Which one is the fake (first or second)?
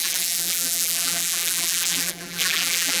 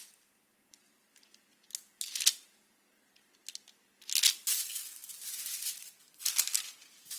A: first